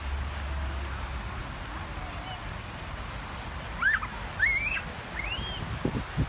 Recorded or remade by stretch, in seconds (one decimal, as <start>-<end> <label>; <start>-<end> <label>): 0.0-6.3 recorded